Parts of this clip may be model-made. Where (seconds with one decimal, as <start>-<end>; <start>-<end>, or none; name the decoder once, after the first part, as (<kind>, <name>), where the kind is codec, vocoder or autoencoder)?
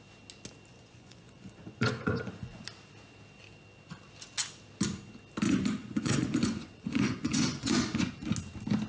0.7-2.6 (vocoder, Vocos); 5.8-8.1